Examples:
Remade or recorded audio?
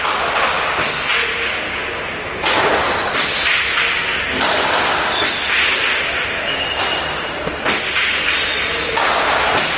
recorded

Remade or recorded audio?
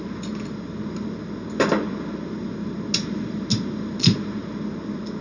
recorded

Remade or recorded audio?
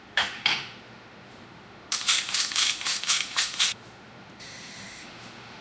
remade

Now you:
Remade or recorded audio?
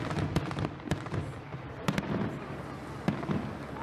recorded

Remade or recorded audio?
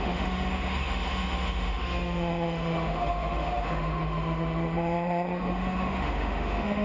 remade